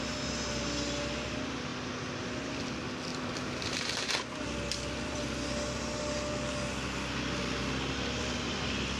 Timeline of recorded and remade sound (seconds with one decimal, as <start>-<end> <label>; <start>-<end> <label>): 0.0-3.1 recorded; 3.1-4.1 remade; 4.1-9.0 recorded